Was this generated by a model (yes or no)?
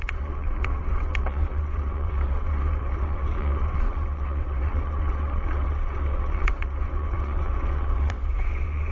yes